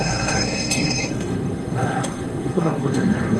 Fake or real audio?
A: fake